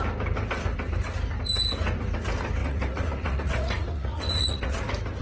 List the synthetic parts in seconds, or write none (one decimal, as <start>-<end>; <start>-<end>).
2.6-4.8